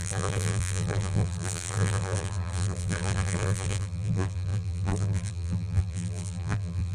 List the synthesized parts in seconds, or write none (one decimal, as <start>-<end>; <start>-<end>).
0.0-6.9